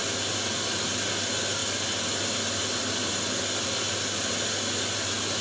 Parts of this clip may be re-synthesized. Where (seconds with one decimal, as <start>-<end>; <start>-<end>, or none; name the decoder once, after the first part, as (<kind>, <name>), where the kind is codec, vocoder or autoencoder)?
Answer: none